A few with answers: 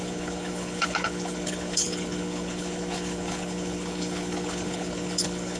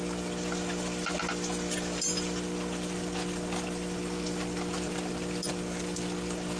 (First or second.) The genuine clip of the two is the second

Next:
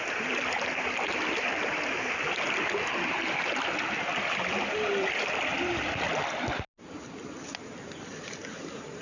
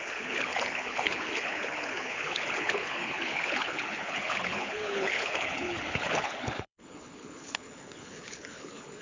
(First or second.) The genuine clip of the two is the first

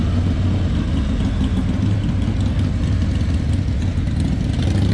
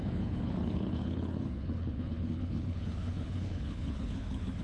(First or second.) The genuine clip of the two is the first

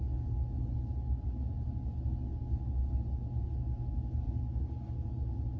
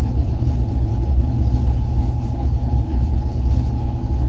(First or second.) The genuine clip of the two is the first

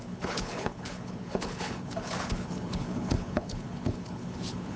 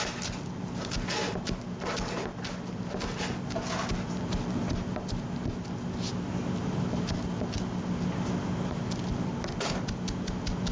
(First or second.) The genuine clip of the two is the second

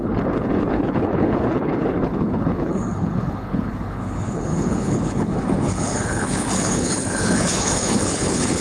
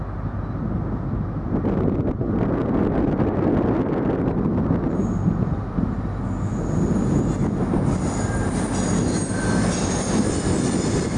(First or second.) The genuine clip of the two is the second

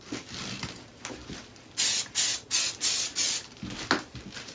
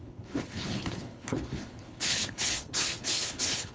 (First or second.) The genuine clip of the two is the first